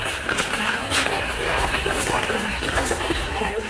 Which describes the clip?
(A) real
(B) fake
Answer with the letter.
B